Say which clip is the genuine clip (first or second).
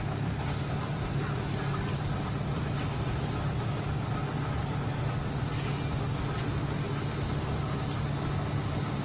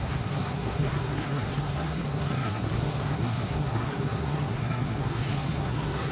first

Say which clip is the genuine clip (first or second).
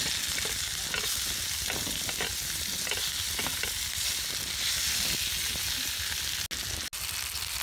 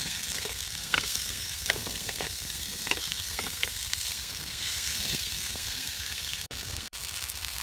first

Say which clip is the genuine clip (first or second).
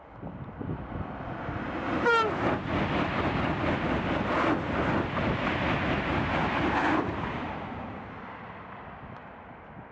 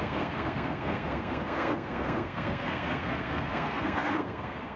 first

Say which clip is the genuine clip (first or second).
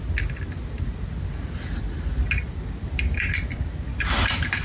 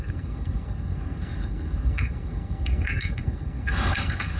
first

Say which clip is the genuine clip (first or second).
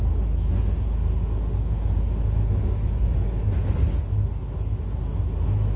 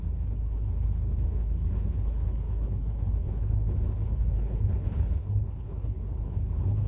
first